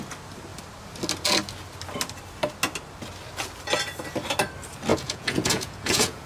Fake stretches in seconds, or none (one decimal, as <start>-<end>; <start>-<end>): 4.9-6.3